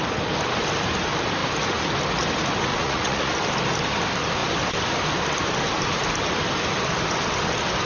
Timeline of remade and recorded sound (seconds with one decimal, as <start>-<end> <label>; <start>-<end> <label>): 0.0-2.7 recorded; 2.7-3.3 remade; 3.3-7.9 recorded